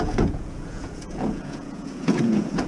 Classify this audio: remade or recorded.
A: remade